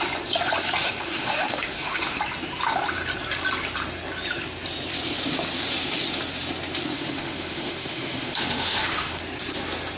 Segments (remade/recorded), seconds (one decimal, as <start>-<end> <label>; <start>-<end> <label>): 0.0-0.8 recorded; 0.8-2.2 remade; 2.2-6.9 recorded; 6.9-9.2 remade; 9.2-10.0 recorded